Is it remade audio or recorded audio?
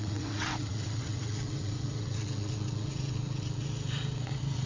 remade